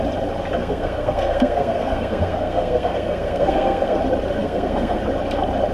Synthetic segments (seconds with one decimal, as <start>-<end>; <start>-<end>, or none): 0.6-4.0; 4.4-5.0